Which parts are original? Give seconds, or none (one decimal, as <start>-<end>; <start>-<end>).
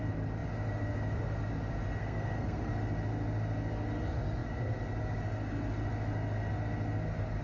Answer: 0.0-2.0; 2.7-7.4